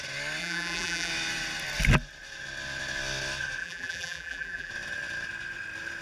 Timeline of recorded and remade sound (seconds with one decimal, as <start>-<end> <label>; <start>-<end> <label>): 0.0-0.4 recorded; 0.4-1.1 remade; 1.1-3.6 recorded; 3.6-4.7 remade; 4.7-6.0 recorded